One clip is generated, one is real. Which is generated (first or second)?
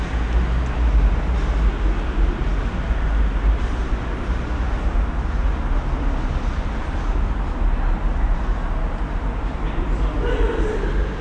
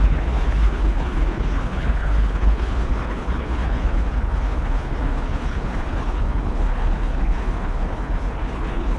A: second